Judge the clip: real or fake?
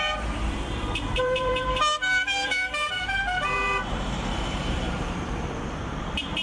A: fake